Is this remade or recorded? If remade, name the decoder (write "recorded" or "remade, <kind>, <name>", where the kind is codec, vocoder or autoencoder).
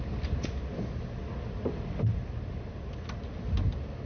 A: recorded